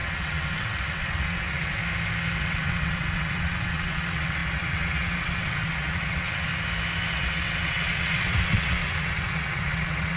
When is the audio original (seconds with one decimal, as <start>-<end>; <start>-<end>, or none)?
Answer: 1.8-2.4; 6.5-7.1